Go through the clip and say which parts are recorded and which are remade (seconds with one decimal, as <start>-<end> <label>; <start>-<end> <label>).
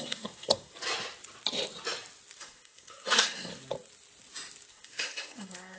0.0-0.7 remade; 0.7-2.4 recorded; 2.4-3.5 remade; 3.5-4.7 recorded; 4.7-5.8 remade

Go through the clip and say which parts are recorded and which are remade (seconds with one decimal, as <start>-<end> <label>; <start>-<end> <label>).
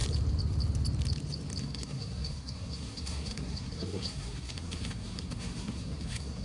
0.0-1.6 recorded; 1.6-6.4 remade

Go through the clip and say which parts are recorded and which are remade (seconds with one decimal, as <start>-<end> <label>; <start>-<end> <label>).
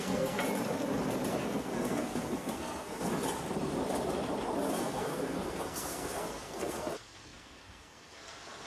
0.0-0.4 remade; 0.4-1.3 recorded; 1.3-3.1 remade; 3.1-4.8 recorded; 4.8-8.7 remade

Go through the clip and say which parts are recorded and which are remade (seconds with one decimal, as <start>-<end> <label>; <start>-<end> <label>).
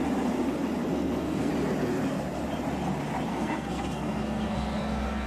0.0-0.9 recorded; 0.9-1.5 remade; 1.5-3.3 recorded; 3.3-5.3 remade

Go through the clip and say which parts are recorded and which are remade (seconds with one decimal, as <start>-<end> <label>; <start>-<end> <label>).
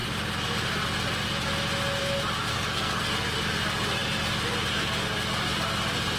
0.0-2.5 recorded; 2.5-3.1 remade; 3.1-6.2 recorded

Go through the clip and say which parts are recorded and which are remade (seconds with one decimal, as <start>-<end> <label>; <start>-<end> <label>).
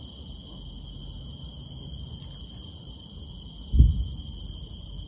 0.0-5.1 recorded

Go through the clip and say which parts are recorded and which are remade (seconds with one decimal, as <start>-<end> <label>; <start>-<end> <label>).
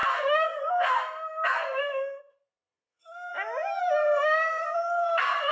0.0-3.3 remade; 3.3-4.0 recorded; 4.0-5.5 remade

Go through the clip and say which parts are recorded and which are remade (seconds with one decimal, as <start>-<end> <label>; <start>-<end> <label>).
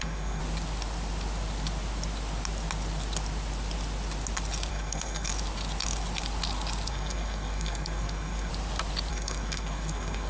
0.0-0.4 remade; 0.4-4.7 recorded; 4.7-5.3 remade; 5.3-6.9 recorded; 6.9-8.5 remade; 8.5-9.1 recorded; 9.1-10.3 remade